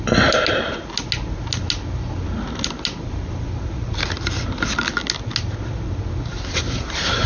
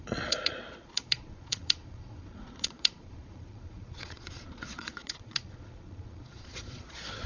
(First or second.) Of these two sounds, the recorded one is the first